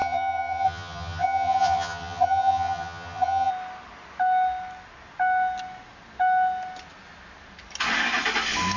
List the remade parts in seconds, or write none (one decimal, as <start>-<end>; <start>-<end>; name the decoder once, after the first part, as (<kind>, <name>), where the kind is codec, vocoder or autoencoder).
0.0-3.5 (vocoder, HiFi-GAN)